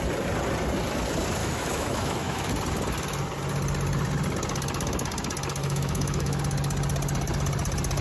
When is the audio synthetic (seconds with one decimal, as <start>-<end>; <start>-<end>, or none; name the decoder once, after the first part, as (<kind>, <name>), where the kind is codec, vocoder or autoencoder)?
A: 1.4-2.5 (autoencoder, DAC-VAE); 5.6-6.4

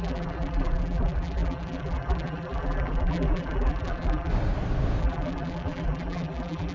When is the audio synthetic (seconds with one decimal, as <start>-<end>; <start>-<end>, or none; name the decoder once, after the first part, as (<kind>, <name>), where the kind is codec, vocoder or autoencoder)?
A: 0.0-4.3 (vocoder, BigVGAN v2); 5.0-6.7

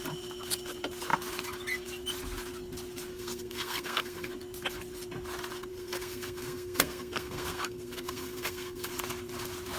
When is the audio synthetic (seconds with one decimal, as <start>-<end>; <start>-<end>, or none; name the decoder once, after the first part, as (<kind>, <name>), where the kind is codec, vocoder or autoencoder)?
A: 3.1-4.3 (codec, SNAC); 5.7-8.9

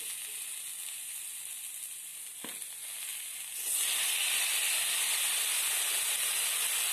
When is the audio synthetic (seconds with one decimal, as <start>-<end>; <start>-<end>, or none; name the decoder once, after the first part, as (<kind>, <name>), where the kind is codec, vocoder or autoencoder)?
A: none